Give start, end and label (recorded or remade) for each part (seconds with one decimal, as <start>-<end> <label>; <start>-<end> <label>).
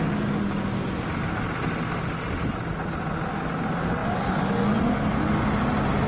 0.0-6.1 recorded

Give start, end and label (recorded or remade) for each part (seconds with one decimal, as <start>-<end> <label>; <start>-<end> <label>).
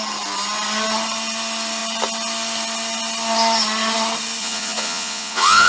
0.0-4.4 recorded; 4.4-5.7 remade